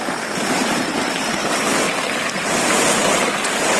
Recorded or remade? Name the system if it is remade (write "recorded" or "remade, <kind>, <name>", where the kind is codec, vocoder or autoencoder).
recorded